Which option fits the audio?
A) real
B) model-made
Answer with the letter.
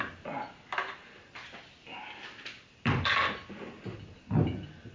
A